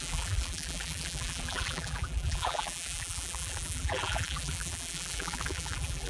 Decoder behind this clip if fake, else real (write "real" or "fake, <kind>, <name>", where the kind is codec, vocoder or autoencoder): fake, vocoder, BigVGAN v2